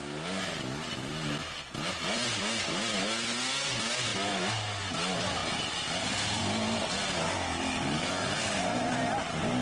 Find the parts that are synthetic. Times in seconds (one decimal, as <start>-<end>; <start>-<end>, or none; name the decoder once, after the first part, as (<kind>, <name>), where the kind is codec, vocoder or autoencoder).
none